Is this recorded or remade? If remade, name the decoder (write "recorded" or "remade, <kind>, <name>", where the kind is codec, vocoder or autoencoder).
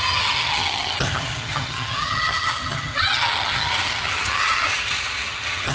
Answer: remade, vocoder, HiFi-GAN